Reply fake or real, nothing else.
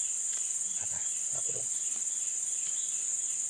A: fake